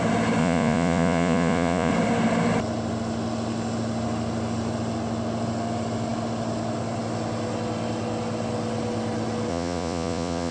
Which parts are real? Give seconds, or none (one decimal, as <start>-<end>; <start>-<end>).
0.0-0.4; 1.9-9.5